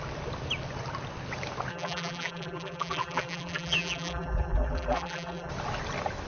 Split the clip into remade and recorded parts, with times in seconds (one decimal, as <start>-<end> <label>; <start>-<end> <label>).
0.0-1.7 recorded; 1.7-5.5 remade; 5.5-6.3 recorded